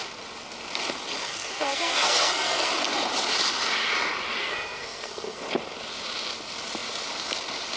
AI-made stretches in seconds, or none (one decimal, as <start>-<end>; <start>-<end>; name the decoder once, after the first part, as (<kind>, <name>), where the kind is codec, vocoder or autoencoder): 1.2-2.7 (codec, SNAC); 4.4-5.4